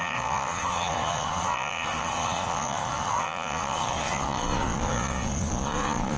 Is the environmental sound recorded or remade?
remade